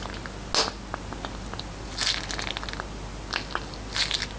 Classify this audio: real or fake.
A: real